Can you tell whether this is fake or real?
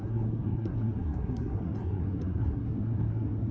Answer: fake